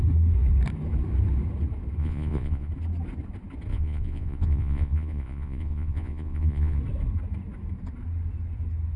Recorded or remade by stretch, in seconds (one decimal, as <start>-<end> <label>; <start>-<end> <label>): 0.0-2.0 recorded; 2.0-2.7 remade; 2.7-3.7 recorded; 3.7-6.8 remade; 6.8-9.0 recorded